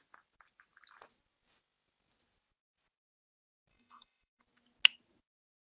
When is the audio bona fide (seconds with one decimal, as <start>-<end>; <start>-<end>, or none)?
0.0-3.7; 4.4-5.7